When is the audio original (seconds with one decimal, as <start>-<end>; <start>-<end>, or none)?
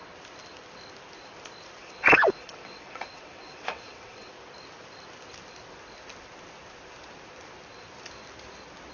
0.0-1.8; 4.3-8.9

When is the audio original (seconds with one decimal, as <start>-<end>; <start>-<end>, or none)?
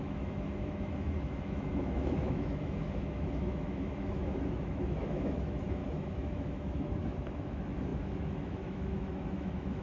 none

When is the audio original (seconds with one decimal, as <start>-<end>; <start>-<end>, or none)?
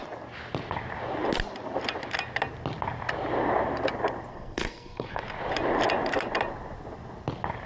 0.0-4.3; 5.2-7.7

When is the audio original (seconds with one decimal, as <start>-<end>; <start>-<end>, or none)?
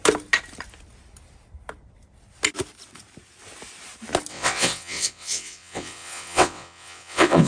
0.0-4.3